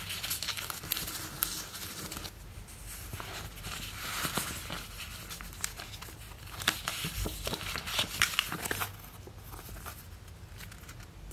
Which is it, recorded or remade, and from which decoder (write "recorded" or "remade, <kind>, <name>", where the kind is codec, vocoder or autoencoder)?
recorded